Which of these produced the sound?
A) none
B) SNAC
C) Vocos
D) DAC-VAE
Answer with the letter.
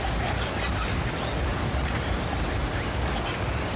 A